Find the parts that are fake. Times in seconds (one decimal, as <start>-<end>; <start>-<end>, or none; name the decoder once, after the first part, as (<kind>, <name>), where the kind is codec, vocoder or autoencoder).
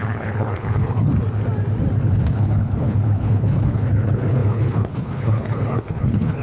0.0-1.1 (codec, HILCodec); 2.1-6.4